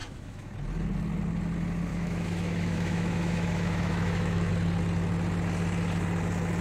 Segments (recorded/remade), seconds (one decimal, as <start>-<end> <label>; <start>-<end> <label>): 0.0-0.5 remade; 0.5-1.9 recorded; 1.9-4.5 remade; 4.5-6.6 recorded